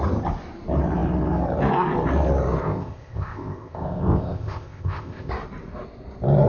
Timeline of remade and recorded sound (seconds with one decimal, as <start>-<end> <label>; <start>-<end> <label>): 0.0-2.6 recorded; 2.6-5.3 remade; 5.3-6.5 recorded